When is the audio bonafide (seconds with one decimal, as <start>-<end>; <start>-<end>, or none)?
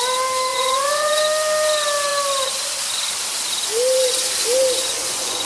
0.0-0.5; 1.2-4.8